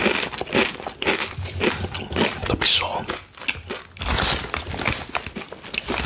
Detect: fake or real real